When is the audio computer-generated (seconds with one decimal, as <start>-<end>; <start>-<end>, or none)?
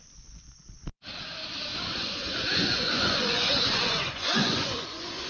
1.7-5.3